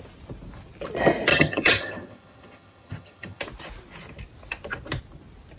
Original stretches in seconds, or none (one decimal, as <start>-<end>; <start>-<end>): 0.0-1.3; 3.4-5.6